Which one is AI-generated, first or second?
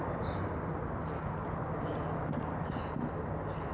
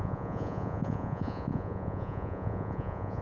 second